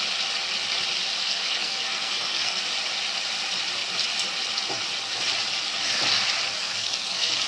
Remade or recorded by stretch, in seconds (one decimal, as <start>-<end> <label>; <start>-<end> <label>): 0.0-1.2 recorded; 1.2-2.6 remade; 2.6-6.5 recorded; 6.5-7.5 remade